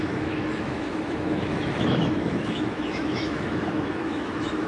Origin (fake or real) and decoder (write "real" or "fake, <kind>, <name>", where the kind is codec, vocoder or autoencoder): fake, autoencoder, DAC-VAE